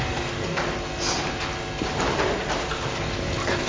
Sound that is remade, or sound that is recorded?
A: recorded